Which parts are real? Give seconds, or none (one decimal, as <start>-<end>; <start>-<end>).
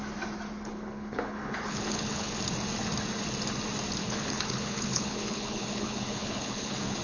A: 0.0-0.7; 2.4-4.0